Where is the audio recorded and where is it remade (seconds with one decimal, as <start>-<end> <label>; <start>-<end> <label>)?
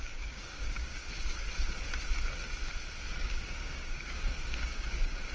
0.0-1.0 remade; 1.0-3.2 recorded; 3.2-5.3 remade